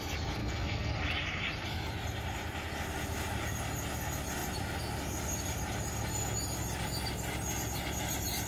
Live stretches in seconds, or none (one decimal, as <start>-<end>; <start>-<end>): 0.0-0.4; 0.9-8.5